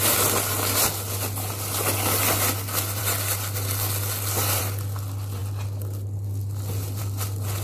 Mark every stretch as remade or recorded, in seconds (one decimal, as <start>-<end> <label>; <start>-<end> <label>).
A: 0.0-7.6 recorded